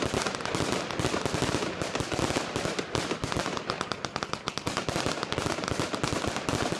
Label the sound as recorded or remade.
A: recorded